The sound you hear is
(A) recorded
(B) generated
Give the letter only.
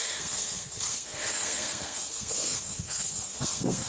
B